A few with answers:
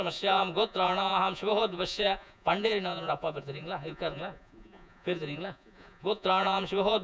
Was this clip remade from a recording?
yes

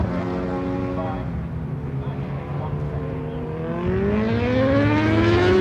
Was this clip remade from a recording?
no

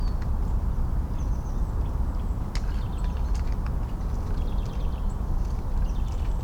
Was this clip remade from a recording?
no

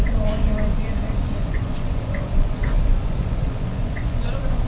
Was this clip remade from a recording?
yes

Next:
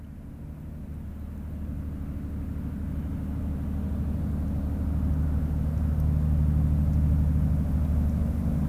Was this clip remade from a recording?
no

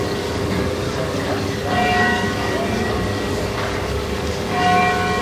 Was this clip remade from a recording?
yes